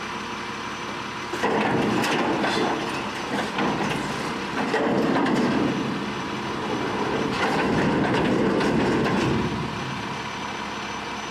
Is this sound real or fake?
real